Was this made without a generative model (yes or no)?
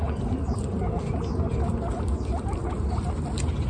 yes